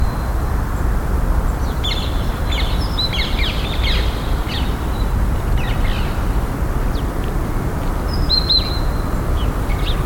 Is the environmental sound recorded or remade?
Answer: recorded